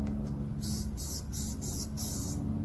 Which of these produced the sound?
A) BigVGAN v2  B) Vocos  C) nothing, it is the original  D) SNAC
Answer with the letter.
C